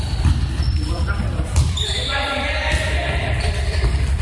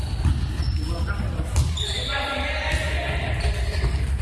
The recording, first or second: second